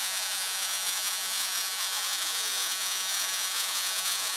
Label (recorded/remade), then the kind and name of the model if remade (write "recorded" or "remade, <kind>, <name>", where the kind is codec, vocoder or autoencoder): remade, vocoder, Vocos